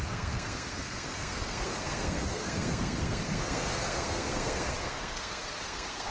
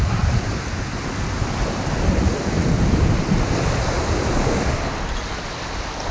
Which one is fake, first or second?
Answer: first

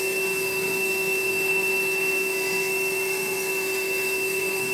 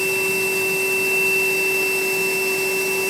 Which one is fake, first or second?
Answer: first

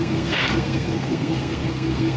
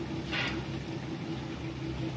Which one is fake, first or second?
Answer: first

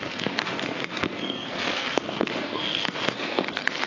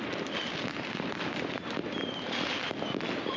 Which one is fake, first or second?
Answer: first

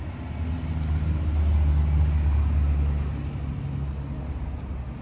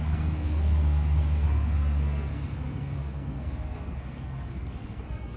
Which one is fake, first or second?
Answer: second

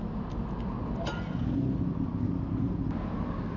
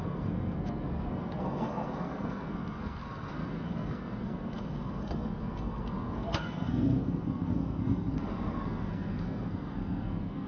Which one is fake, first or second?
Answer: second